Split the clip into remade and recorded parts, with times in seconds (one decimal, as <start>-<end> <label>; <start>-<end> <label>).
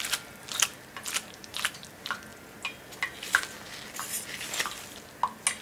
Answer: 0.0-5.6 recorded